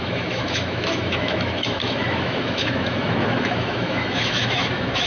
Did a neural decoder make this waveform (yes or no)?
yes